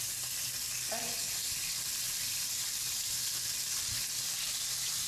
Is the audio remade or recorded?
recorded